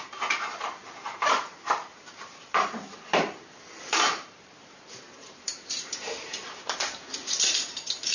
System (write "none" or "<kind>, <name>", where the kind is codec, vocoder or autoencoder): vocoder, BigVGAN v2